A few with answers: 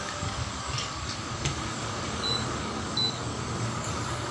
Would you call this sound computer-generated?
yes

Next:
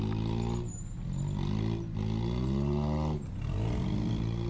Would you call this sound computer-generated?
no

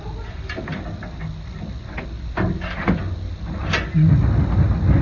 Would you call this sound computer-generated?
no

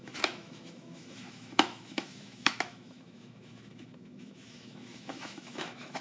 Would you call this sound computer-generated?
yes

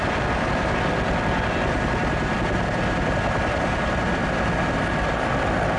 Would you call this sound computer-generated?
no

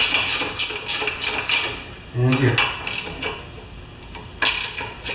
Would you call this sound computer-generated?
no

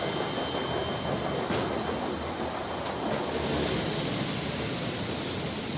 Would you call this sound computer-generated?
no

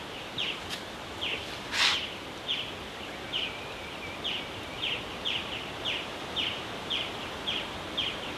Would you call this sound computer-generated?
no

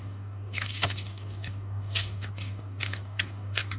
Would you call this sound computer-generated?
yes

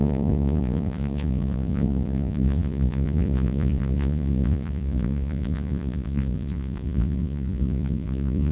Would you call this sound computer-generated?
yes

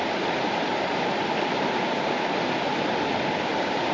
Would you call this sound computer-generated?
yes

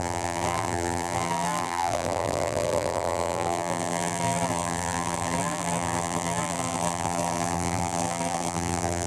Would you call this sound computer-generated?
yes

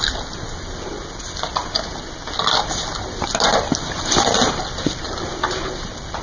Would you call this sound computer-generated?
no